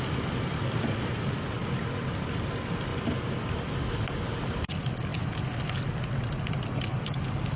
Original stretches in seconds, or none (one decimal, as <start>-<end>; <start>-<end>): 0.0-7.6